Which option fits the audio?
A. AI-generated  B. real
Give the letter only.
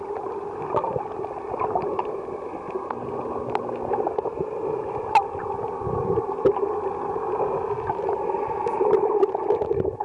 B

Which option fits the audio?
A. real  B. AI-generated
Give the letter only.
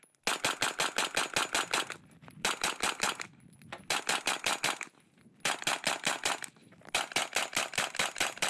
A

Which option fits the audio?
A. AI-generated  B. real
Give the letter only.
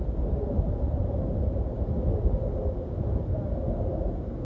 B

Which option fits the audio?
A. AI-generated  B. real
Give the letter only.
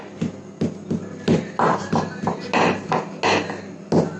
B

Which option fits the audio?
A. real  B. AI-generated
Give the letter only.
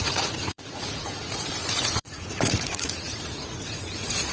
B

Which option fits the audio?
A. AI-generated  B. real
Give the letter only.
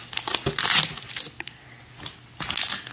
B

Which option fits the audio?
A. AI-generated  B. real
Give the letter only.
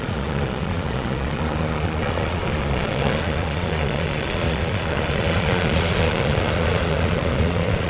A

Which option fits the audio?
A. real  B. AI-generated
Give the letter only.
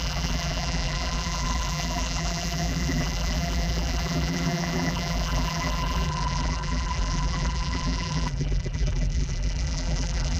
B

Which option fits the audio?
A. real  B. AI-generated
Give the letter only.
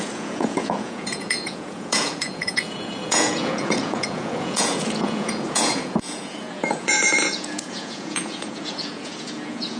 B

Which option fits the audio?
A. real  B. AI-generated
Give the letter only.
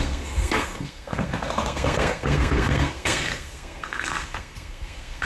B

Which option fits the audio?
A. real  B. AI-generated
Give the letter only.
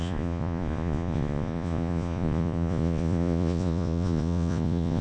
B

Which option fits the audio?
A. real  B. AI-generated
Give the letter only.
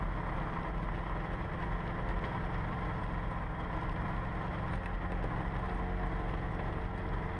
A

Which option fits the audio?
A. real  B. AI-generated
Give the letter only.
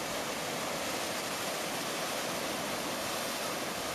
A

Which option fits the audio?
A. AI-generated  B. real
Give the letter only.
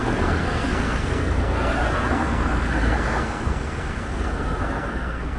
A